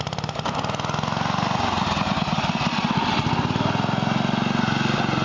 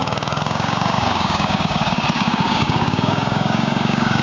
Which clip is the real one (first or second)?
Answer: first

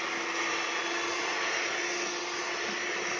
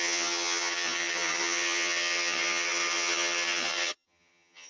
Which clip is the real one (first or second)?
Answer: first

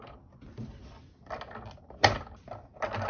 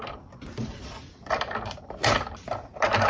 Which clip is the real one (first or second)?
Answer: first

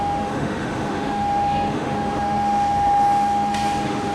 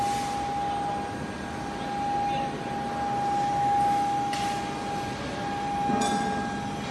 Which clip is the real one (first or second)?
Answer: second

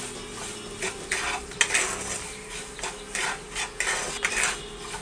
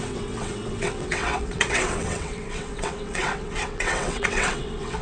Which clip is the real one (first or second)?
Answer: first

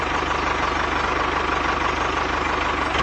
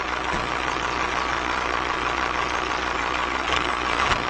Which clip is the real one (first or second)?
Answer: first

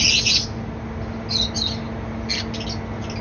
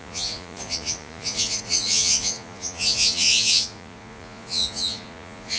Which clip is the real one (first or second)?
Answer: first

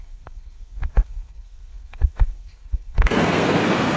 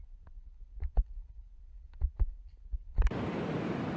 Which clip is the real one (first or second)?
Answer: second